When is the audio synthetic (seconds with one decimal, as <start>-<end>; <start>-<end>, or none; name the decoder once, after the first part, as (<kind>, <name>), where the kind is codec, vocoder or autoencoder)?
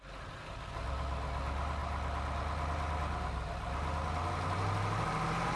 none